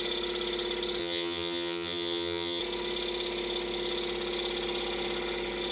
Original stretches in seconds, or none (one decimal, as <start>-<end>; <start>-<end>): 0.0-1.0; 2.6-5.7